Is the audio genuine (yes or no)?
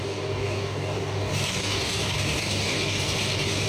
no